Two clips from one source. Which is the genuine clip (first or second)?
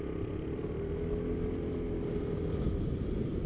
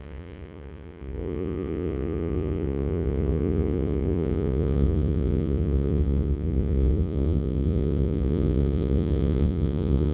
first